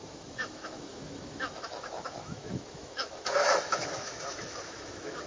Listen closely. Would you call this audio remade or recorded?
remade